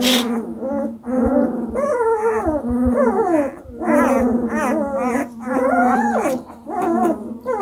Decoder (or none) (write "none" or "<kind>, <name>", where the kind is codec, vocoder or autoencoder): none